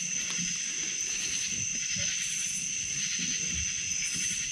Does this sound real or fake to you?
real